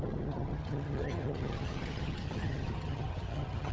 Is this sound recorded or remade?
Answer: remade